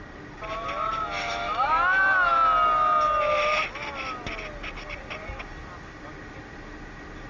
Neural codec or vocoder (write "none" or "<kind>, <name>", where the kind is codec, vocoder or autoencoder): none